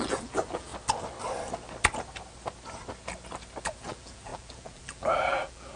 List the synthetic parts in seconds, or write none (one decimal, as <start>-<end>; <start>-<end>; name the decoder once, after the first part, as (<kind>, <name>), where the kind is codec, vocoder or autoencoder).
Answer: 0.0-0.7 (vocoder, BigVGAN v2); 3.6-5.8